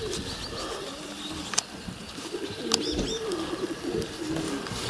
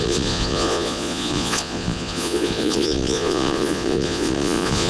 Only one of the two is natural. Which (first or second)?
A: first